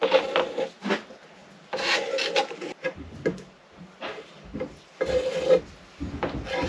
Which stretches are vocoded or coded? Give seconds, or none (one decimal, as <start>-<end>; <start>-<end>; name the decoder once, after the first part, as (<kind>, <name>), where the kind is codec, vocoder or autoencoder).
none